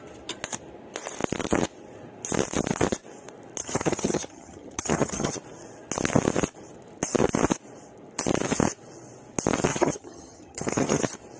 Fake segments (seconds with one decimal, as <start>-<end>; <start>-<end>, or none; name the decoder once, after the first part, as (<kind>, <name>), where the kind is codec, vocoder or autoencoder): 3.6-5.3 (vocoder, HiFi-GAN); 9.7-11.0